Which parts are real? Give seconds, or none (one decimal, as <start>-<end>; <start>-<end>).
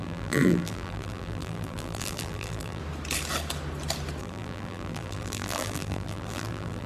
2.8-4.2